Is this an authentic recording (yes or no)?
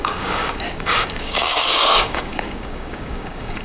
no